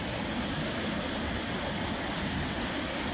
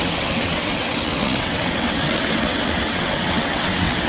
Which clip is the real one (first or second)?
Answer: first